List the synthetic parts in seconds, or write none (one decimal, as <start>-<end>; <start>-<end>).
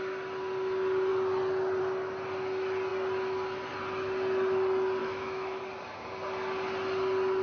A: 5.0-5.6